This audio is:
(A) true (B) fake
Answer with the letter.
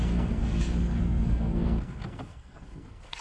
B